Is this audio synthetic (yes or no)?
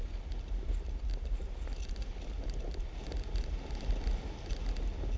no